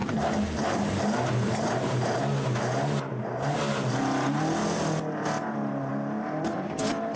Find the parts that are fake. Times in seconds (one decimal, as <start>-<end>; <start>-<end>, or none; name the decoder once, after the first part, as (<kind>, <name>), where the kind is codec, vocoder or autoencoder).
0.0-2.2 (vocoder, BigVGAN v2)

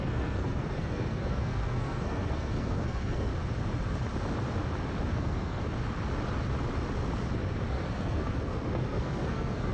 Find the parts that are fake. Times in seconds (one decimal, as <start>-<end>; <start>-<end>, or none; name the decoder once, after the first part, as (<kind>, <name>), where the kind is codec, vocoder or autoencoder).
0.0-3.3 (codec, SNAC); 5.1-5.6; 7.7-9.7